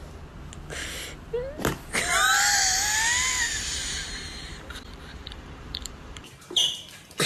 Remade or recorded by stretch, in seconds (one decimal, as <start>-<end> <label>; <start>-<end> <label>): 0.0-3.7 recorded; 3.7-7.3 remade